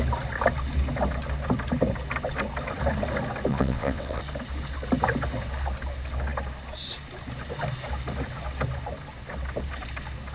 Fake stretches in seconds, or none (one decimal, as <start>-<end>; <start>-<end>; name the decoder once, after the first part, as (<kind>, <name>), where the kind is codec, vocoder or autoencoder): 3.5-4.2 (vocoder, WaveNeXt)